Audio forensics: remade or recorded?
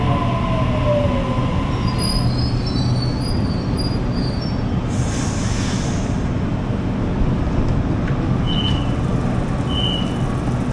recorded